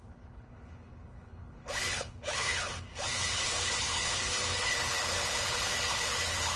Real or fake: fake